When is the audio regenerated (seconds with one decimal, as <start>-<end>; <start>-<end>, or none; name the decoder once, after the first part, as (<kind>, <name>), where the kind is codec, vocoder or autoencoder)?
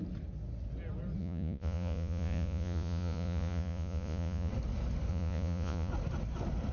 1.2-4.5 (vocoder, Vocos); 5.1-5.9